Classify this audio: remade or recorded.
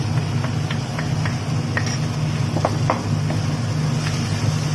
recorded